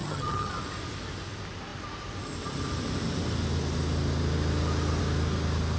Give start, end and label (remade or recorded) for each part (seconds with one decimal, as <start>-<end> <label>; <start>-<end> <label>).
0.0-0.5 remade; 0.5-5.8 recorded